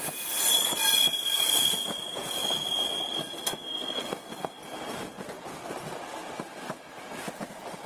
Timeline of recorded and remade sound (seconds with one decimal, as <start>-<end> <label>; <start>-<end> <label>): 0.0-3.2 recorded; 3.2-4.6 remade; 4.6-7.9 recorded